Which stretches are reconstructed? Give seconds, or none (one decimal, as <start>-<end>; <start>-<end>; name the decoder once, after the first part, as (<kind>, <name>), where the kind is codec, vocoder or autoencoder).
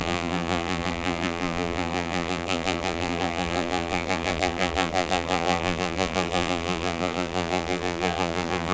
0.0-8.7 (vocoder, BigVGAN v2)